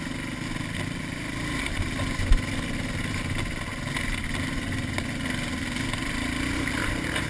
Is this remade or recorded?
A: recorded